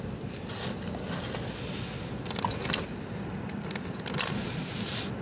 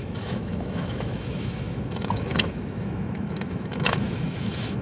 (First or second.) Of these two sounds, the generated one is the second